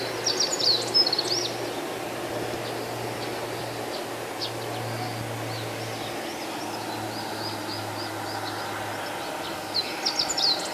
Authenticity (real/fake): real